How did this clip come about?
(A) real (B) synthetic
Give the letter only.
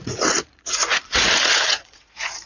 B